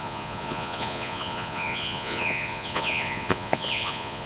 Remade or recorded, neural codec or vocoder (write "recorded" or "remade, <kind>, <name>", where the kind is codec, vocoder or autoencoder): remade, vocoder, Vocos